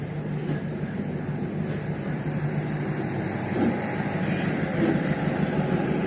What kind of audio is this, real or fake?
real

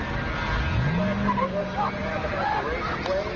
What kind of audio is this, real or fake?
real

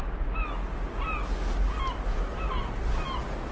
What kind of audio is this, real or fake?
real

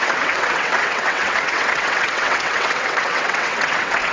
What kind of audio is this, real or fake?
fake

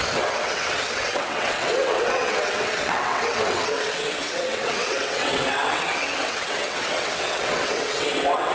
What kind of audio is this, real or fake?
fake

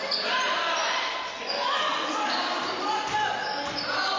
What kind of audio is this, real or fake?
real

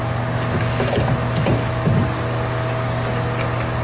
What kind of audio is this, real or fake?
real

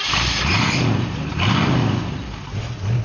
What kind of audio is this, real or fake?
real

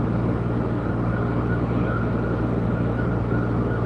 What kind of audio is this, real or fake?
real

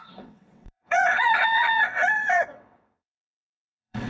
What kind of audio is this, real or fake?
fake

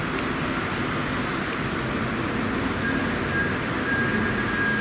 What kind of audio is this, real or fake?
real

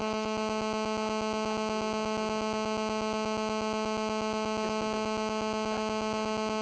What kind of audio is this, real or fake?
real